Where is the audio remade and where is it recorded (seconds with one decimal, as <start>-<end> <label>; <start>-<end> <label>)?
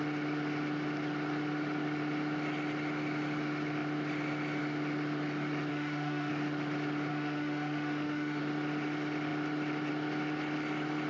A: 0.0-5.7 recorded; 5.7-6.3 remade; 6.3-7.1 recorded; 7.1-8.4 remade; 8.4-11.1 recorded